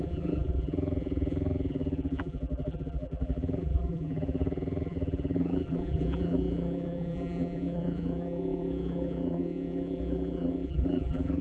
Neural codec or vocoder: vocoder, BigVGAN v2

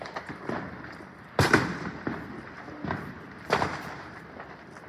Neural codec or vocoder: none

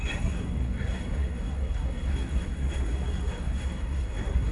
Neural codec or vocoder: codec, SNAC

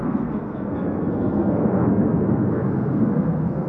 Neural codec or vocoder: codec, SNAC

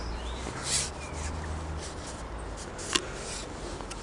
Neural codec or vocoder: none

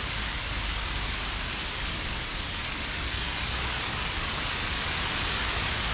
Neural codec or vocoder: codec, DAC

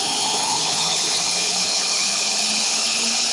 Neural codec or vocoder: codec, HILCodec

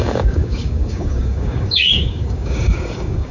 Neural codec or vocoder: codec, DAC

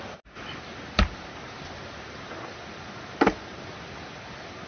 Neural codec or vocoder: none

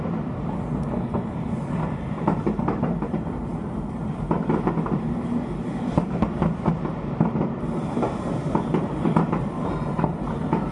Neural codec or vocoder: vocoder, BigVGAN v2